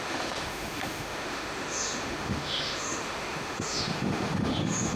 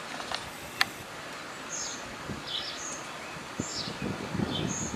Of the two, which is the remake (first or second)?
first